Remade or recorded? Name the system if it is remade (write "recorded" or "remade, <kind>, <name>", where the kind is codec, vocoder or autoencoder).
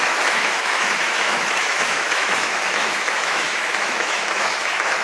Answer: remade, autoencoder, DAC-VAE